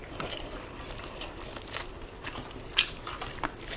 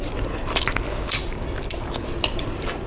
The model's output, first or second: first